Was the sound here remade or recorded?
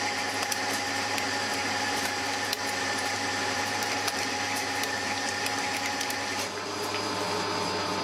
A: remade